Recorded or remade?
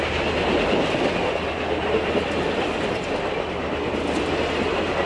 recorded